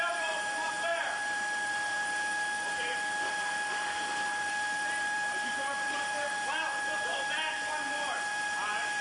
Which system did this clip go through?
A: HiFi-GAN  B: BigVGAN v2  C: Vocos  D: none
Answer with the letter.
B